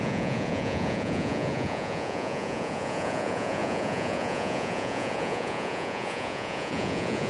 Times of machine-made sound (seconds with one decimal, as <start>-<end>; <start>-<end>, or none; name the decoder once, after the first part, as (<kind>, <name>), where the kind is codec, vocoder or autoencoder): 0.0-7.3 (vocoder, Vocos)